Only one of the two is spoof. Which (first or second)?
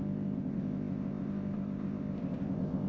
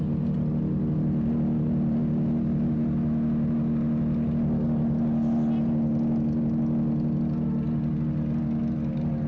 first